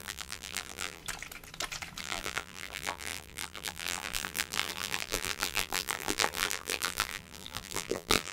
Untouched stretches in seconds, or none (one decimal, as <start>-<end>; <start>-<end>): 1.0-2.0